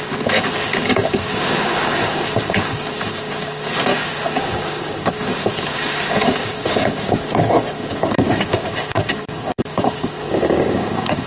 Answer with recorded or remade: remade